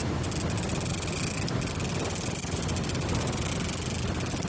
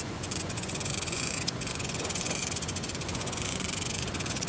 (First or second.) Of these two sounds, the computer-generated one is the second